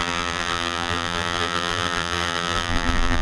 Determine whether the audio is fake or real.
fake